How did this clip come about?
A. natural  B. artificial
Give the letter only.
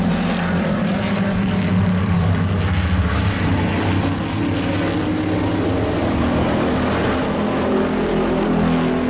A